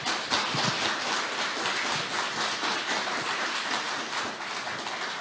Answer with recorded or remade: recorded